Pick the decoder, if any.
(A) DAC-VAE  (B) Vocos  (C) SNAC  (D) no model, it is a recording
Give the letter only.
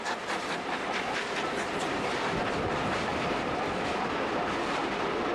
D